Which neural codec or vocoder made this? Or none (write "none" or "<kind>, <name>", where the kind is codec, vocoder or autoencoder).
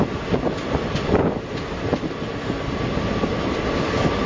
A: none